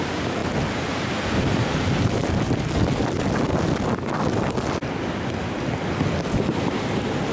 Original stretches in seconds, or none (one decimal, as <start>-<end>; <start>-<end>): 0.4-1.4; 2.2-6.6